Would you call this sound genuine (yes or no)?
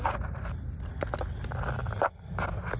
yes